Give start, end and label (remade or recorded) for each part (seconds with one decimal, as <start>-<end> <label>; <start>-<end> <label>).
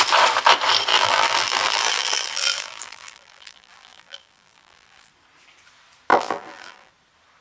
0.0-0.9 recorded; 0.9-5.1 remade; 5.1-6.1 recorded; 6.1-6.9 remade; 6.9-7.4 recorded